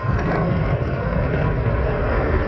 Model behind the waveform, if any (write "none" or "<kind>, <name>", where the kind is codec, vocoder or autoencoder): codec, SNAC